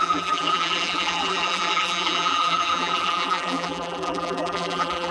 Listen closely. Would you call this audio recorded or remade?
remade